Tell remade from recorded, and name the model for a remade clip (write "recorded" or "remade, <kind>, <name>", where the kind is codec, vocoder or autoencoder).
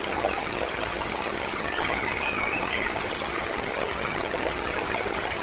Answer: remade, vocoder, HiFi-GAN